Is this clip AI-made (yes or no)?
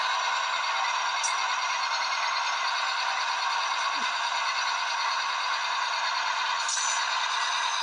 no